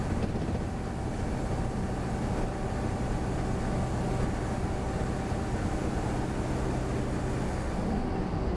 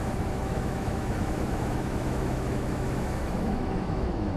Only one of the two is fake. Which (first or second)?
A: second